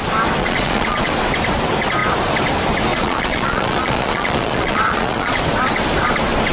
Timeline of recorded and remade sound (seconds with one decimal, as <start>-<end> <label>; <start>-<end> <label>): 0.0-0.4 recorded; 0.4-1.1 remade; 1.1-2.9 recorded; 2.9-5.4 remade; 5.4-6.5 recorded